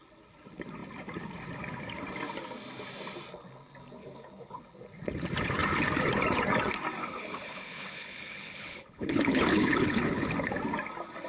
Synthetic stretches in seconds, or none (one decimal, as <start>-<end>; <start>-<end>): 4.0-4.6; 7.0-10.3